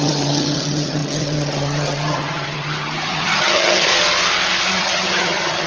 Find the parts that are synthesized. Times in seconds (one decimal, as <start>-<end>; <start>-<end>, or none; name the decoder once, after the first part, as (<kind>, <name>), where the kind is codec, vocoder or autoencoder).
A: 0.0-3.9 (vocoder, HiFi-GAN); 4.7-5.7